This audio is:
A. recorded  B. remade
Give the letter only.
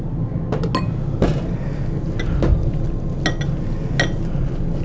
A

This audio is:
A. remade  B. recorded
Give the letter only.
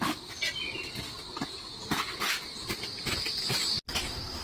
B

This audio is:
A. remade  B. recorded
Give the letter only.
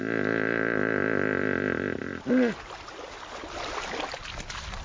B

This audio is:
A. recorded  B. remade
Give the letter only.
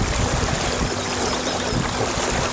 A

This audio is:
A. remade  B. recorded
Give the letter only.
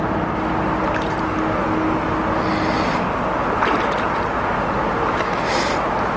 B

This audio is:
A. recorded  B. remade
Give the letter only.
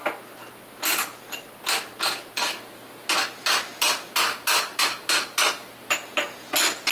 A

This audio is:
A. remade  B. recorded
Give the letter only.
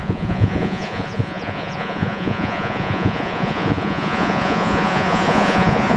A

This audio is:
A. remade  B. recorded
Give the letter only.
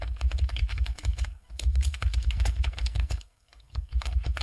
A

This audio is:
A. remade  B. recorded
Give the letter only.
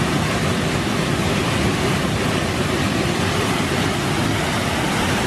B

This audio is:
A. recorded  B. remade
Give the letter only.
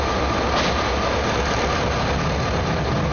A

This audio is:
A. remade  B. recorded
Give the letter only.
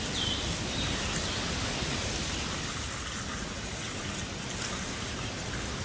B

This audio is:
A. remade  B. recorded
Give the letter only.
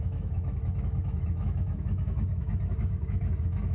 A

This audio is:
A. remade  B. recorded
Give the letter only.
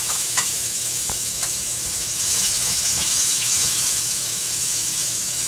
A